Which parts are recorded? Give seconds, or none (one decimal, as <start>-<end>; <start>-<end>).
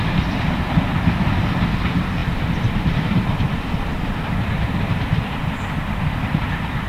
0.0-2.2; 4.9-5.4; 6.2-6.9